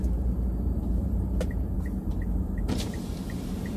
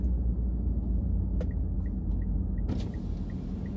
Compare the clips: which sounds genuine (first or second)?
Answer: second